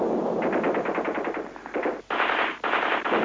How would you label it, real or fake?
real